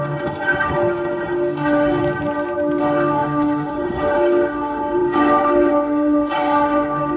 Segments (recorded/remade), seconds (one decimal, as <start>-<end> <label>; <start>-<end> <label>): 0.0-2.0 remade; 2.0-2.8 recorded; 2.8-7.2 remade